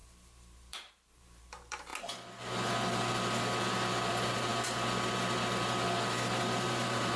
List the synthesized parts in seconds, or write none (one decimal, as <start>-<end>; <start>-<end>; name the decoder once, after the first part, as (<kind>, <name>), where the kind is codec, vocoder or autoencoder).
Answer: 0.0-1.9 (vocoder, BigVGAN v2); 4.1-4.5; 6.4-7.2